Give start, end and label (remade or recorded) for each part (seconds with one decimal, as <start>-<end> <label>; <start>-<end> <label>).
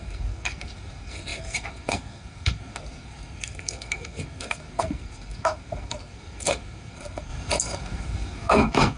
0.0-9.0 remade